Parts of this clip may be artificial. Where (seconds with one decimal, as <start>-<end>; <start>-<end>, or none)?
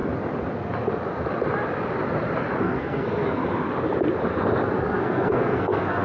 2.6-3.4; 4.8-6.0